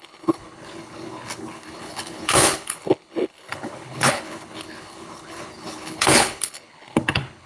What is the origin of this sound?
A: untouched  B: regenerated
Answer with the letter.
B